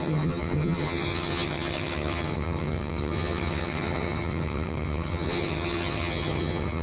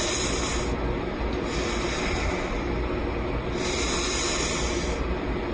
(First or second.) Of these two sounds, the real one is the second